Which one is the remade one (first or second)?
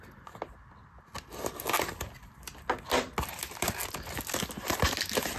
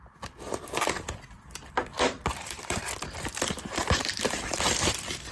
second